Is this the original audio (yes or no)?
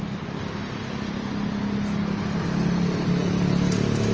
yes